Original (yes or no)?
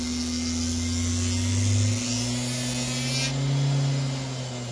yes